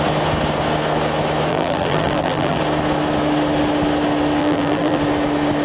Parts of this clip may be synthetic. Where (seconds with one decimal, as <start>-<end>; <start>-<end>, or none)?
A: 1.5-2.6; 4.4-5.0